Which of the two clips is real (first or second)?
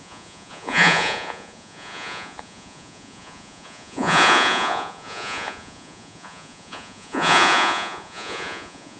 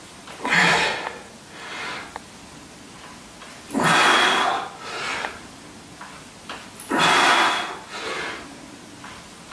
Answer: second